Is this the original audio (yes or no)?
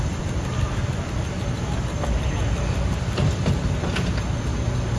no